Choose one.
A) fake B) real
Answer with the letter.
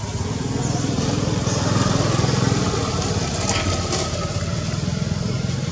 B